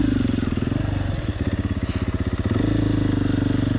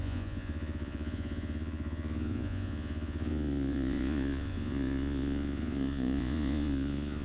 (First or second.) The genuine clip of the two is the first